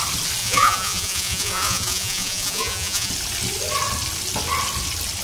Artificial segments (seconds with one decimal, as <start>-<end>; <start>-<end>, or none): 0.4-3.1